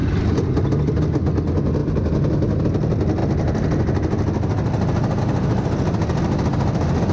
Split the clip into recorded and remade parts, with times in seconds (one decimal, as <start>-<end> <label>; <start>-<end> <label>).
0.0-0.7 remade; 0.7-7.1 recorded